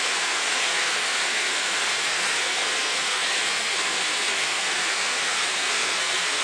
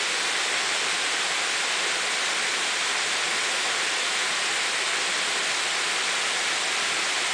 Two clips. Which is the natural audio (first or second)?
second